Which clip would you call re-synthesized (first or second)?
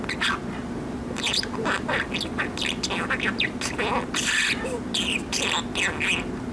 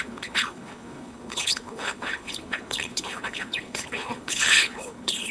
second